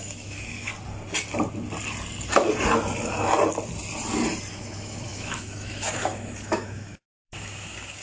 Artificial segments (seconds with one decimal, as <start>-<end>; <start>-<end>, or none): 0.0-0.7; 4.5-8.0